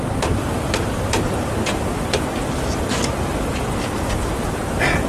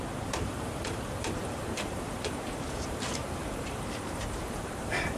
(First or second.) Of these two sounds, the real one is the first